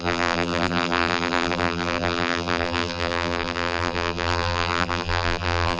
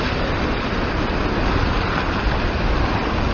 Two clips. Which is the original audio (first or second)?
second